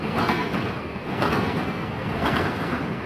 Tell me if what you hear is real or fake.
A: fake